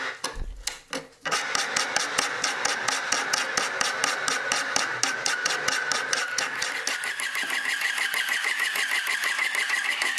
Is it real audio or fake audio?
real